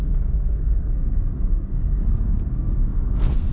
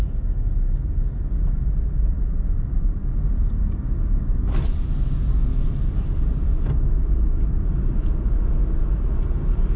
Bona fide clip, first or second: second